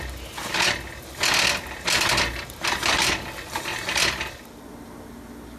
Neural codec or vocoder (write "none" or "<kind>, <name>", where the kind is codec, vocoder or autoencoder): none